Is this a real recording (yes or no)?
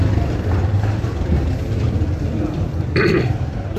yes